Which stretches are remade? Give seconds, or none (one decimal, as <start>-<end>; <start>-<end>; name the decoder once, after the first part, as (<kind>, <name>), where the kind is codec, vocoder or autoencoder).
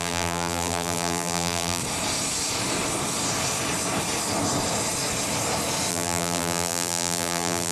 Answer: 0.0-1.8 (vocoder, BigVGAN v2); 5.9-7.7